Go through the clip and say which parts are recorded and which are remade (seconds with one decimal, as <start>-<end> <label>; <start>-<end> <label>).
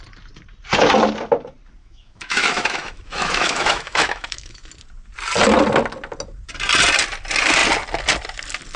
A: 0.0-1.8 recorded; 1.8-4.7 remade; 4.7-8.8 recorded